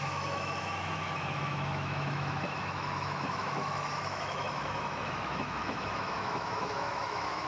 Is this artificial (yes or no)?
yes